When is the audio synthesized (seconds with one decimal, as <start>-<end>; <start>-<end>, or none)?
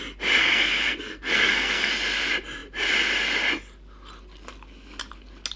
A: 0.4-1.9